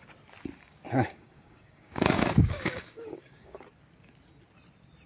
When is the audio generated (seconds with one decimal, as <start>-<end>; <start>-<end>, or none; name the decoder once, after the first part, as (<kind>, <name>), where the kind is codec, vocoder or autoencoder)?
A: 0.5-3.6 (codec, DAC)